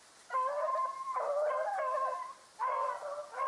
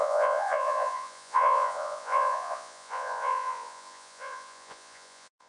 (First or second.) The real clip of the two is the first